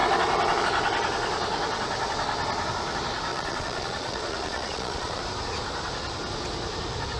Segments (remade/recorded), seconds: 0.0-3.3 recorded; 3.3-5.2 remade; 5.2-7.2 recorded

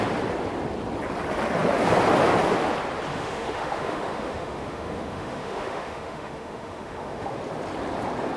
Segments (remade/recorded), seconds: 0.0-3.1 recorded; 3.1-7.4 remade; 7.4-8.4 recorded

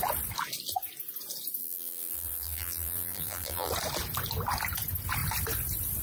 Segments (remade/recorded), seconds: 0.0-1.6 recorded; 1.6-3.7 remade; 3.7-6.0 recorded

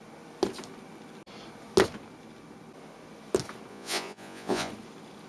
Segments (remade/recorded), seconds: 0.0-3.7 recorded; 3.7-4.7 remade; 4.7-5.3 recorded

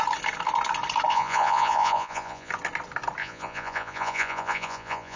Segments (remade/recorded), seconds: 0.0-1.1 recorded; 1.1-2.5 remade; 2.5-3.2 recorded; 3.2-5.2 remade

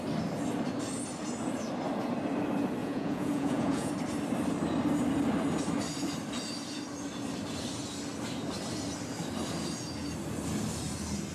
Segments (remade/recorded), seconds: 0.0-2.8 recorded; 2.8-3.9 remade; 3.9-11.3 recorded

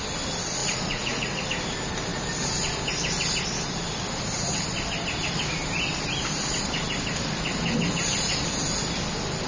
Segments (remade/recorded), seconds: 0.0-0.6 recorded; 0.6-1.4 remade; 1.4-9.5 recorded